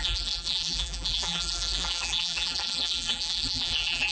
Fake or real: fake